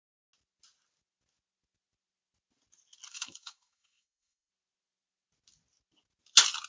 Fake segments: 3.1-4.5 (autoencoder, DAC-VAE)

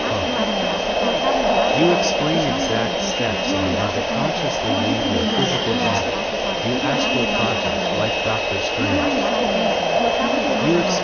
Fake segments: 5.2-6.0 (codec, SNAC)

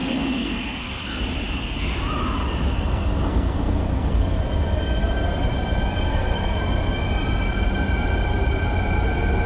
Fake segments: 0.0-1.2 (codec, SNAC); 2.7-4.4; 6.1-6.6

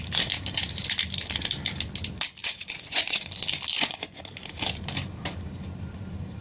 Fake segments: 2.4-3.3 (vocoder, Vocos); 3.7-4.2